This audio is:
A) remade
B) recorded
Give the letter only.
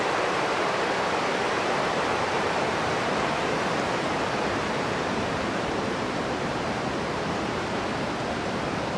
A